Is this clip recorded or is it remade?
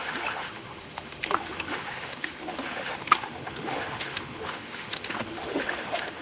remade